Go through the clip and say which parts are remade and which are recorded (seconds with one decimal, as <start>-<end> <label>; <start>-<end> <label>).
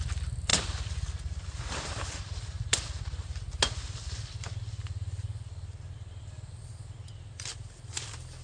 0.0-8.4 recorded